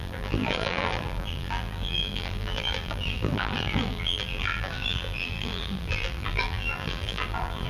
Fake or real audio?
fake